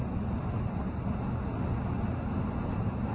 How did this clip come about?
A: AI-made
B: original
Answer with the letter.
B